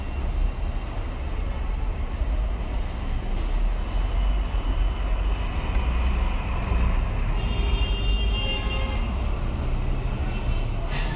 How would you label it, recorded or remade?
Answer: recorded